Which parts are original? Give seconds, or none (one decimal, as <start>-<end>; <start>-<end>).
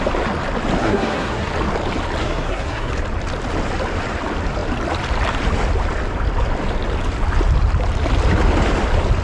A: 0.0-0.8; 1.5-2.2; 2.9-9.2